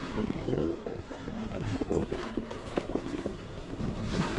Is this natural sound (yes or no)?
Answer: no